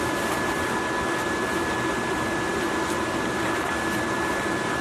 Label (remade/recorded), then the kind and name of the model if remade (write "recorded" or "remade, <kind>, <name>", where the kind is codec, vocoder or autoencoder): recorded